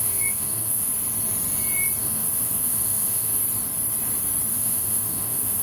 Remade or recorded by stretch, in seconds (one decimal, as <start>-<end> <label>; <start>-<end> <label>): 0.0-0.9 remade; 0.9-2.0 recorded; 2.0-3.4 remade; 3.4-4.5 recorded; 4.5-5.6 remade